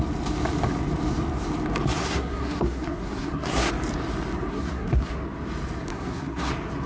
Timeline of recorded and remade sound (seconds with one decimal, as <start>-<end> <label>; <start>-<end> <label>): 0.0-2.0 recorded; 2.0-3.7 remade; 3.7-4.5 recorded; 4.5-5.1 remade; 5.1-5.9 recorded; 5.9-6.5 remade; 6.5-6.9 recorded